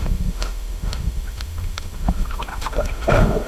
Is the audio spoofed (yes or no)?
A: yes